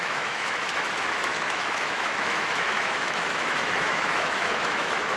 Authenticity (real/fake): fake